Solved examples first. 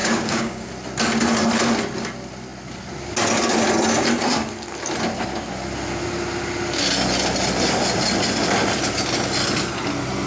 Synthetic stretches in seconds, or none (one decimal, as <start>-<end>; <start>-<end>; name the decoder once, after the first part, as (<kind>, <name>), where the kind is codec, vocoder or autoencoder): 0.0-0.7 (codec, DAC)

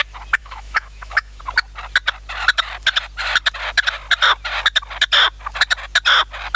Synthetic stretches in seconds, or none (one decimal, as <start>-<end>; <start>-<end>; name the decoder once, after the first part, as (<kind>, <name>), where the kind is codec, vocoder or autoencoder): 0.4-1.4 (autoencoder, DAC-VAE)

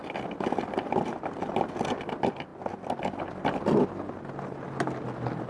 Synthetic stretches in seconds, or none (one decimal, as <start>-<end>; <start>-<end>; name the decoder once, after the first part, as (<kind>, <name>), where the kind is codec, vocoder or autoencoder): none